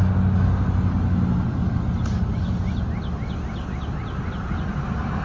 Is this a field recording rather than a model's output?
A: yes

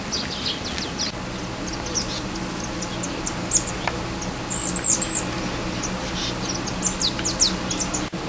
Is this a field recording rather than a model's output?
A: yes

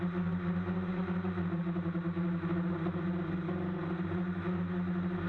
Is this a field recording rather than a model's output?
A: yes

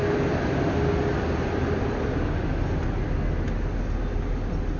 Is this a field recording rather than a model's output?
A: yes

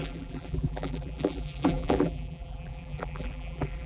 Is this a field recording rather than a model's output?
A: no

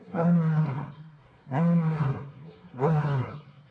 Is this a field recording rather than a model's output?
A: no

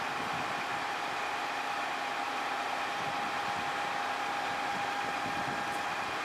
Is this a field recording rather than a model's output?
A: yes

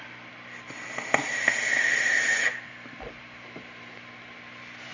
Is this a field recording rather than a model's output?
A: yes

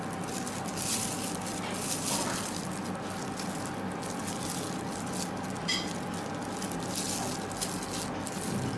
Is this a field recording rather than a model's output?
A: yes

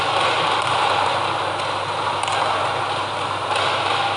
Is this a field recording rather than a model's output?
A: yes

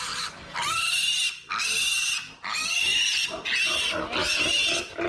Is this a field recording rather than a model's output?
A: yes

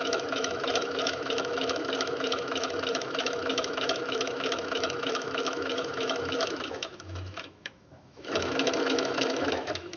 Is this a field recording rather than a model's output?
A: no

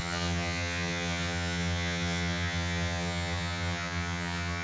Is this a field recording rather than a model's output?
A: no